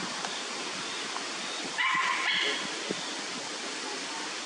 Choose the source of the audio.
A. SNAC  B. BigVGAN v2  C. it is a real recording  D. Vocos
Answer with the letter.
C